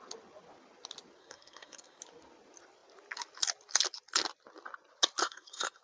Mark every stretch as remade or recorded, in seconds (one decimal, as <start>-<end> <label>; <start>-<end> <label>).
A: 0.0-1.2 recorded; 1.2-2.0 remade; 2.0-5.2 recorded; 5.2-5.8 remade